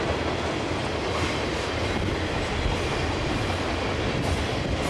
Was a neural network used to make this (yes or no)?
no